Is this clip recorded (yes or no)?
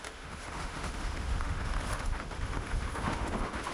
no